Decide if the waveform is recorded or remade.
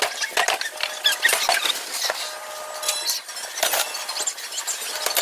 recorded